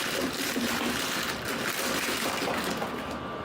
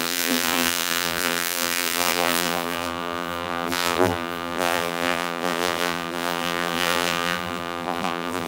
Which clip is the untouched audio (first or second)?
first